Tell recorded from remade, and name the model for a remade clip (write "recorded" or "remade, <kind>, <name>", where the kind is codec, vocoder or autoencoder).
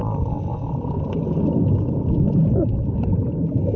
recorded